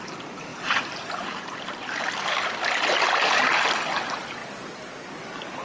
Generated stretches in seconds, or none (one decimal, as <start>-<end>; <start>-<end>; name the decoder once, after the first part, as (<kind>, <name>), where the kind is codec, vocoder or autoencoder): none